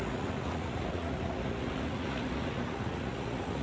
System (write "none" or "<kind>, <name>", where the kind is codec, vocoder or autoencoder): vocoder, Vocos